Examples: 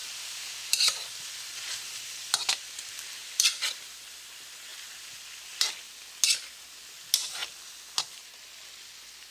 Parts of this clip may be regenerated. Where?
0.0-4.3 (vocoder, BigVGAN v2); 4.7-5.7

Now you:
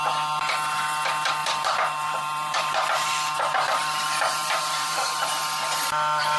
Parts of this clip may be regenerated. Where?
1.4-5.2 (vocoder, BigVGAN v2)

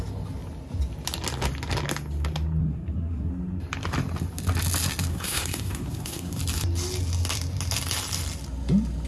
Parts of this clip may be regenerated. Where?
2.6-3.3 (codec, SNAC); 5.1-6.4

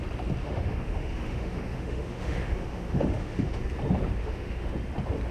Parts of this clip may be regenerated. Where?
0.4-3.6 (autoencoder, DAC-VAE); 4.2-4.7

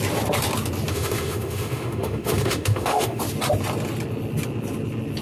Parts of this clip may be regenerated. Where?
0.9-3.2 (autoencoder, DAC-VAE)

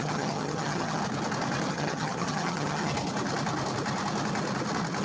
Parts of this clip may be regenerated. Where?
0.0-1.0 (vocoder, HiFi-GAN); 1.7-2.9

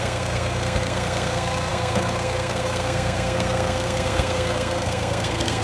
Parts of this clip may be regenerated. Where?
0.0-5.6 (codec, SNAC)

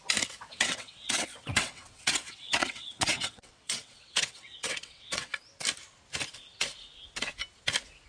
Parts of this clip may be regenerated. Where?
0.5-5.4 (vocoder, WaveNeXt)